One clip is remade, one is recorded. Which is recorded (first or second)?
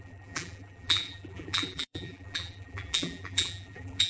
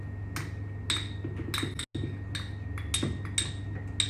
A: second